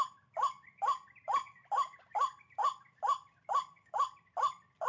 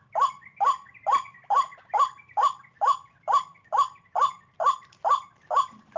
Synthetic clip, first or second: first